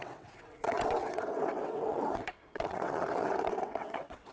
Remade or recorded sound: remade